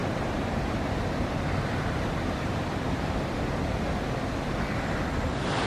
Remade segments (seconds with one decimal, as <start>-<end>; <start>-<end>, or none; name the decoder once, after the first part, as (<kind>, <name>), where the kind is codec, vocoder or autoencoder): 0.0-3.2 (vocoder, BigVGAN v2)